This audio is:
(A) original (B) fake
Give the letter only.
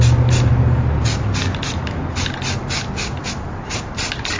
A